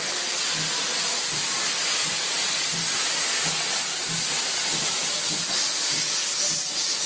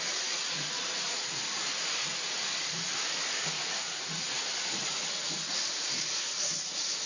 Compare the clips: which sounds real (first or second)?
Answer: first